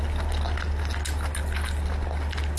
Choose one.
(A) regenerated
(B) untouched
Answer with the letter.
B